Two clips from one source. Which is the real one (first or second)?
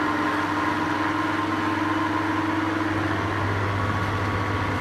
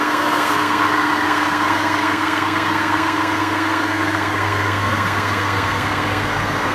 first